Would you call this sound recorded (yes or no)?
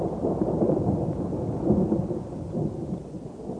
yes